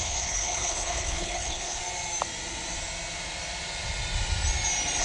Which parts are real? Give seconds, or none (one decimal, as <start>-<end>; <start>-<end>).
1.8-5.0